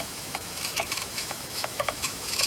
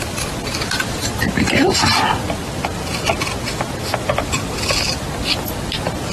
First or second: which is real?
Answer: second